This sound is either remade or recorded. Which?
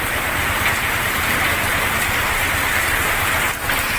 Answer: recorded